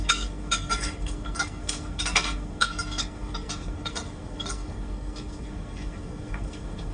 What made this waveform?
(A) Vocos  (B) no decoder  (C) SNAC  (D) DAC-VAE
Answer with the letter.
C